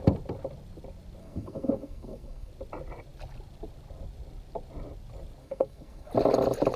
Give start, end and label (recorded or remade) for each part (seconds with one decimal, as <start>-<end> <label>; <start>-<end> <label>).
0.0-1.2 recorded; 1.2-2.5 remade; 2.5-5.4 recorded; 5.4-6.1 remade; 6.1-6.8 recorded